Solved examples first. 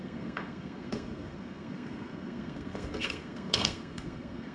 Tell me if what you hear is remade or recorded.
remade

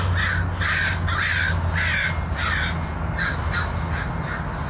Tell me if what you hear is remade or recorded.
recorded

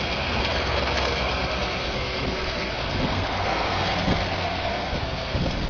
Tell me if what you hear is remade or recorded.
remade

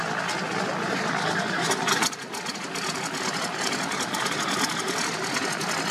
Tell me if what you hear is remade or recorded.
recorded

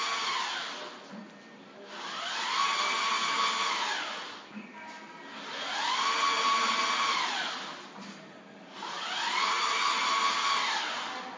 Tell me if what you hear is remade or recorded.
recorded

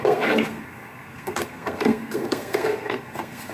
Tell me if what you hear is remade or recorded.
remade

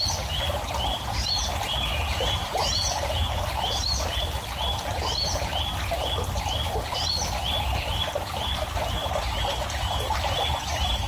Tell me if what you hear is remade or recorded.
recorded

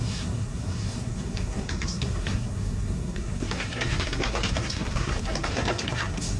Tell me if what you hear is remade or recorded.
remade